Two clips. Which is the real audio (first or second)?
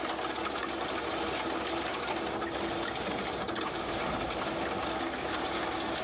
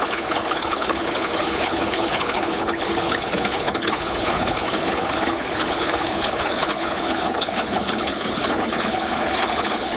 first